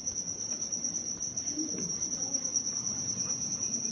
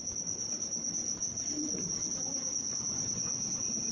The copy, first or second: first